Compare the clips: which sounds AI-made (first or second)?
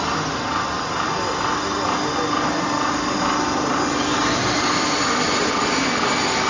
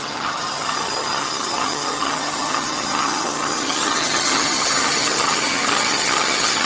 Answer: second